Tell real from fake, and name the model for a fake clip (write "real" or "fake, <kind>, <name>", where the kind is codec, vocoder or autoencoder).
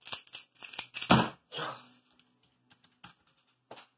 real